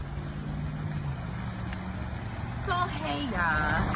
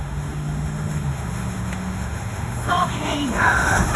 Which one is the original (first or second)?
first